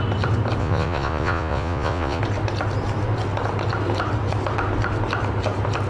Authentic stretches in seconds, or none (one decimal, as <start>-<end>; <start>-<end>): 0.0-0.6; 2.2-5.9